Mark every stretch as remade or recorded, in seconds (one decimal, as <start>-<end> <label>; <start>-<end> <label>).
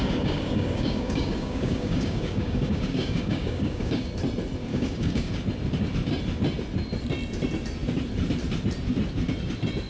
0.0-4.1 remade; 4.1-4.7 recorded; 4.7-5.3 remade; 5.3-9.9 recorded